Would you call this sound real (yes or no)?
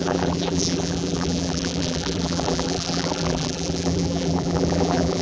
no